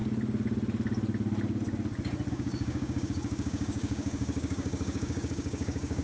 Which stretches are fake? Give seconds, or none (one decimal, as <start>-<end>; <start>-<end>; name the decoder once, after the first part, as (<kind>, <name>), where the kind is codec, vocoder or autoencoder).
2.3-6.0 (codec, DAC)